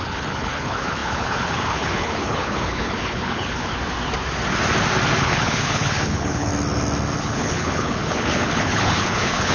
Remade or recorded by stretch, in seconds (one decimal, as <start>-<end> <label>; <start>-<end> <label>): 0.0-3.7 remade; 3.7-5.2 recorded; 5.2-6.5 remade; 6.5-7.2 recorded; 7.2-9.5 remade